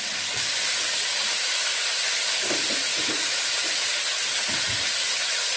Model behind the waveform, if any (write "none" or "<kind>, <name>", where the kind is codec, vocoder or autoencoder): none